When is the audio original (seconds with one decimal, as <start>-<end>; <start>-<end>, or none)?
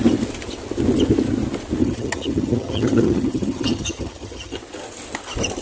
0.0-1.8; 4.6-5.6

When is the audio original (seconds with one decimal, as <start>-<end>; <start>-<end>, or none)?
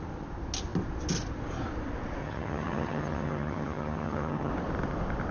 0.0-2.2; 4.5-5.3